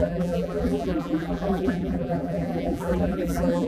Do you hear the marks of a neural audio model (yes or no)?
yes